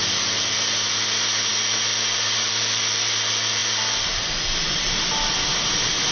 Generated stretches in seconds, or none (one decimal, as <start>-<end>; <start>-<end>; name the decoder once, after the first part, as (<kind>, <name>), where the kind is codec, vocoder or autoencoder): 1.9-2.5 (vocoder, BigVGAN v2)